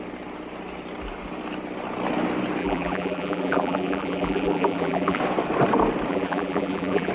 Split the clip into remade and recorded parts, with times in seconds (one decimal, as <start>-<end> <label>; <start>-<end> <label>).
0.0-2.6 recorded; 2.6-5.2 remade; 5.2-6.1 recorded; 6.1-7.1 remade